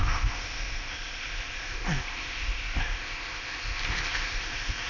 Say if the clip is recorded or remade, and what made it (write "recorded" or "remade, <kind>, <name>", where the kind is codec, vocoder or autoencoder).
remade, codec, ZipCodec